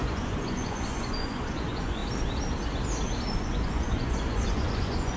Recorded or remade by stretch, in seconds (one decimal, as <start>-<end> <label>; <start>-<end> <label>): 0.0-2.0 remade; 2.0-3.3 recorded; 3.3-5.2 remade